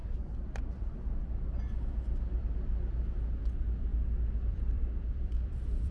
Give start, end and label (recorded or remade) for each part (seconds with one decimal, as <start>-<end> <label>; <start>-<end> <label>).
0.0-3.9 recorded; 3.9-5.9 remade